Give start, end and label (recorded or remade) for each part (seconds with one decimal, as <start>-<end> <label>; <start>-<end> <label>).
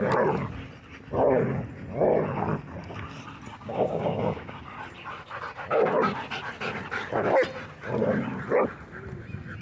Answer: 0.0-3.5 recorded; 3.5-4.6 remade; 4.6-9.6 recorded